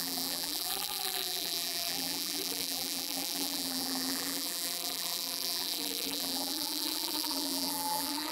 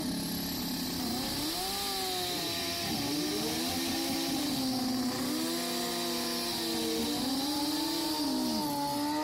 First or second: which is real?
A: second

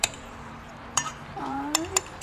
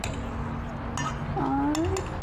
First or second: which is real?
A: second